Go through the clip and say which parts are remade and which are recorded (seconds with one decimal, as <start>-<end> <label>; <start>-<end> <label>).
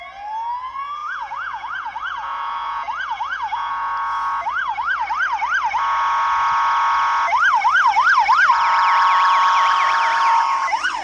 0.0-1.0 recorded; 1.0-3.7 remade; 3.7-11.0 recorded